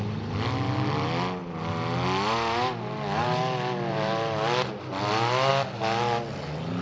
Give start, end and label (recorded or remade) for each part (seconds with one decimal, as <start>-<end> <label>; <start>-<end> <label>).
0.0-6.8 recorded